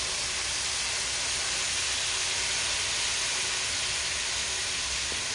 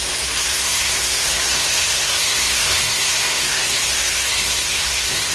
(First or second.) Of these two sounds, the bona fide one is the first